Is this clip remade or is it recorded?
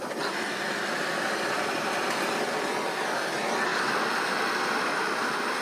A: remade